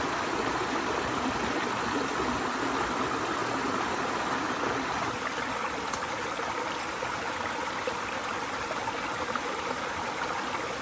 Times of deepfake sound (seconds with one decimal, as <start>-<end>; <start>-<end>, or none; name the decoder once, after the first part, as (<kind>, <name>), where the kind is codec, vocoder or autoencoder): none